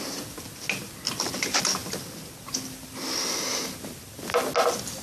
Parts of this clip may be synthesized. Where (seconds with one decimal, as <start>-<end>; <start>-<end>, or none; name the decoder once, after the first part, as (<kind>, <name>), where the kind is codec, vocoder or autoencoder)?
none